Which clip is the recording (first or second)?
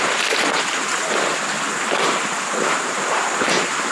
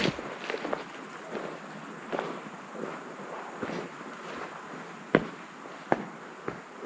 second